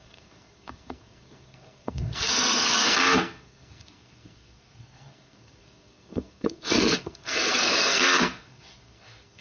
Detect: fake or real fake